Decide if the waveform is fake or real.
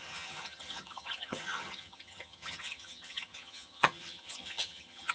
fake